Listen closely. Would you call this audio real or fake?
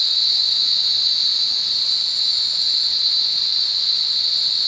real